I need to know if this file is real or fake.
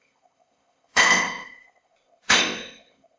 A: fake